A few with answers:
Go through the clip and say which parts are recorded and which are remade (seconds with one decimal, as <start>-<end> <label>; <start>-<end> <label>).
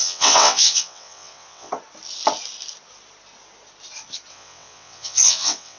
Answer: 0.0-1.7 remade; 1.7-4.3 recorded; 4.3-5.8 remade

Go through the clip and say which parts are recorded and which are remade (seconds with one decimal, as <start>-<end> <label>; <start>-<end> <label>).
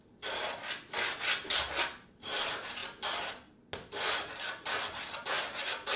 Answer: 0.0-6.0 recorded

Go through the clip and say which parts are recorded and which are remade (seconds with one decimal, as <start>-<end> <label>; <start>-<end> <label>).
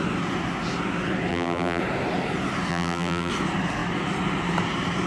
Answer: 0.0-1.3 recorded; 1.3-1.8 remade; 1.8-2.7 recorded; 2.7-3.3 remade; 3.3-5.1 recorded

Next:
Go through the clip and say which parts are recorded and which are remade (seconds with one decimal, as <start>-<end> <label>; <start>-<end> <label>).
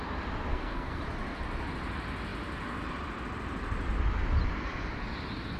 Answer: 0.0-0.5 recorded; 0.5-1.0 remade; 1.0-5.6 recorded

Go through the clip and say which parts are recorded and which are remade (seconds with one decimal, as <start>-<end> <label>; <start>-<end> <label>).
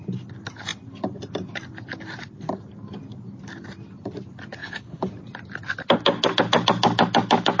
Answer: 0.0-4.6 recorded; 4.6-5.1 remade; 5.1-7.6 recorded